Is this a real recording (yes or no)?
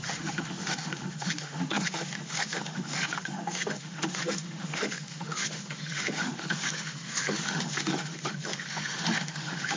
no